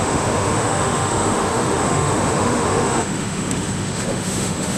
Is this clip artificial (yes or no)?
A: yes